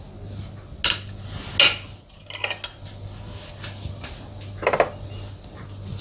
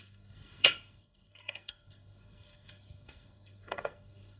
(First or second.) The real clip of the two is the first